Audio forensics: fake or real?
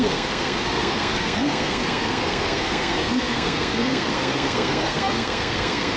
fake